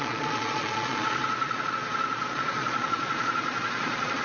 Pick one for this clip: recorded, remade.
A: remade